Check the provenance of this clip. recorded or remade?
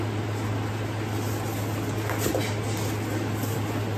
recorded